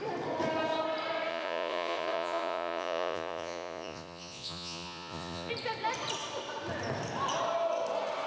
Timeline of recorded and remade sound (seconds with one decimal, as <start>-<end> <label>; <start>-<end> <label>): 0.0-1.3 recorded; 1.3-5.5 remade; 5.5-8.3 recorded